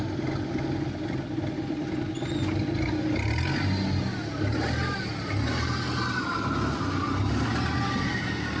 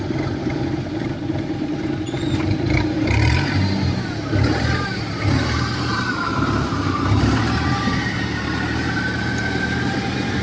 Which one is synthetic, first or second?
second